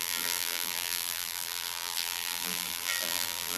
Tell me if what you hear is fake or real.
fake